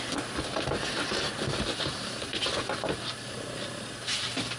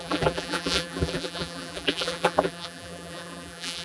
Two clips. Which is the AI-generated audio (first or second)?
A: second